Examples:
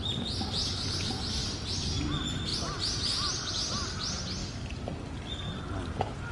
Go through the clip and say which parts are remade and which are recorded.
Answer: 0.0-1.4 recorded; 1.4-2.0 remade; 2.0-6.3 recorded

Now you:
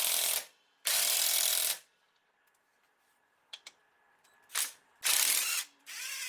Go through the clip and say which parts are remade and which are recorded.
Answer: 0.0-6.3 remade

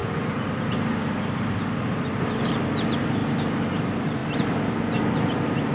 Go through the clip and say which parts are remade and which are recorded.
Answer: 0.0-3.2 remade; 3.2-3.7 recorded; 3.7-5.7 remade

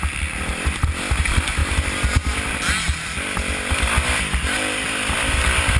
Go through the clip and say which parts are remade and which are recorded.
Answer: 0.0-5.8 recorded